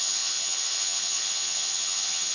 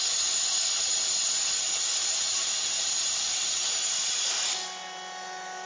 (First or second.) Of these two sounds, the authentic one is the second